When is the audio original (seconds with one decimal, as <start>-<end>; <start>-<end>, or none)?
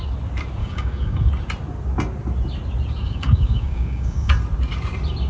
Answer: 0.0-0.6; 1.3-3.0; 4.3-5.3